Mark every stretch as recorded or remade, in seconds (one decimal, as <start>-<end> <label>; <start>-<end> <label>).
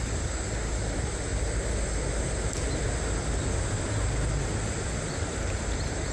0.0-1.3 remade; 1.3-5.0 recorded; 5.0-6.1 remade